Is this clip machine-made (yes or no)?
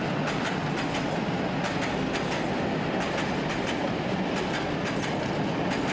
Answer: no